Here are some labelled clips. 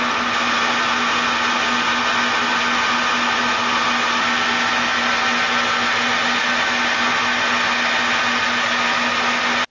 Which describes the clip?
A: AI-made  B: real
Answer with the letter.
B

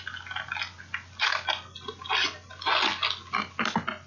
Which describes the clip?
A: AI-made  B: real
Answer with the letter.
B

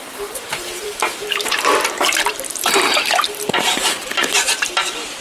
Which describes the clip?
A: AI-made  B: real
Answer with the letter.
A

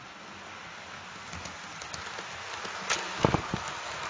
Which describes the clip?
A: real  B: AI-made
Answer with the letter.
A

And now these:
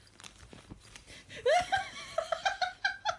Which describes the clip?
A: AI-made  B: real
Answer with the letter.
A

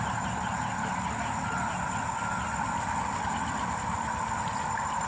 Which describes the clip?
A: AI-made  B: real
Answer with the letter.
B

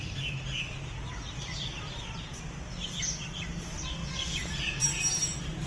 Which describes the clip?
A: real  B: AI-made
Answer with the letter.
B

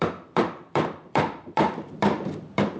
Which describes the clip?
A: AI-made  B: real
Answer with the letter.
A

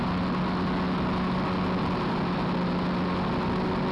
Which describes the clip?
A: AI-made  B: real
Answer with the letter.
B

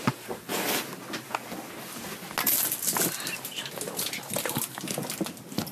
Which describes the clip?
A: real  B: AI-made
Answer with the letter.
A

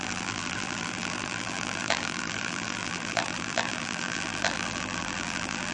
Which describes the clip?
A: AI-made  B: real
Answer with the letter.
A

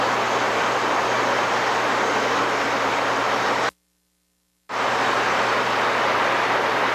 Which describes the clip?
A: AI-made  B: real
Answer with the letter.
B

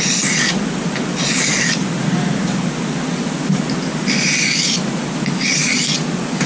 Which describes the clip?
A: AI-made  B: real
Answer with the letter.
B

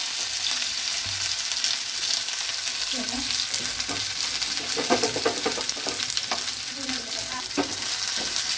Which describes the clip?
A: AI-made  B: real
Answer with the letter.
B